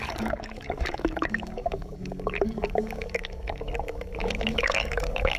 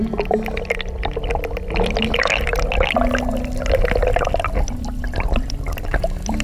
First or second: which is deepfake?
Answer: first